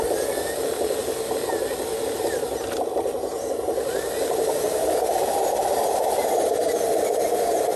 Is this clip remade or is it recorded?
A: recorded